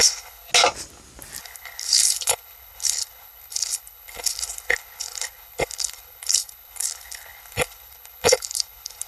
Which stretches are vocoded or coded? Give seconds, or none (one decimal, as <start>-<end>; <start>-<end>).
0.0-0.5; 1.4-9.1